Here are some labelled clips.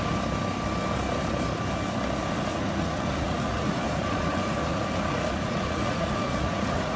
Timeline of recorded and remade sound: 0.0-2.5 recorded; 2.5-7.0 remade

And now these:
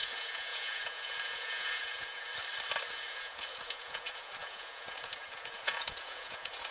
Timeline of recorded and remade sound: 0.0-2.3 remade; 2.3-2.9 recorded; 2.9-6.7 remade

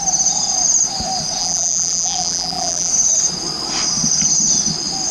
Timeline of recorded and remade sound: 0.0-1.4 recorded; 1.4-2.9 remade; 2.9-5.1 recorded